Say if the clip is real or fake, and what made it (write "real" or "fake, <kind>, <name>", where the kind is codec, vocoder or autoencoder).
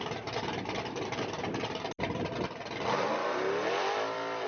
real